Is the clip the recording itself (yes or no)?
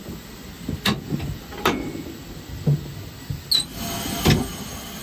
yes